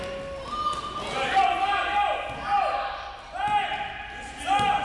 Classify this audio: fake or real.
real